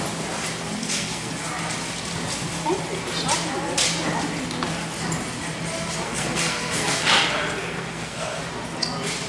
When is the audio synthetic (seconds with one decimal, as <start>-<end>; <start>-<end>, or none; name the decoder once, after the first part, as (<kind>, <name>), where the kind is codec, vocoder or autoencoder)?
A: 0.8-1.3 (codec, SNAC); 6.0-8.4